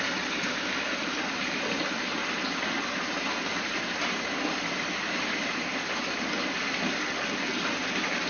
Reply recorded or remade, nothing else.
remade